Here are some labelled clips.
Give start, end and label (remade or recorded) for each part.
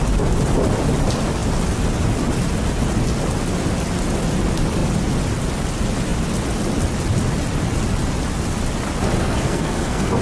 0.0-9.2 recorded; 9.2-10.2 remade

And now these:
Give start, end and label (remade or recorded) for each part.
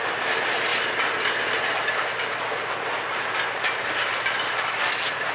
0.0-5.3 recorded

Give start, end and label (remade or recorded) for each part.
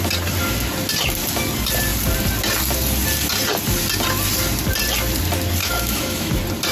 0.0-5.6 recorded; 5.6-6.3 remade; 6.3-6.7 recorded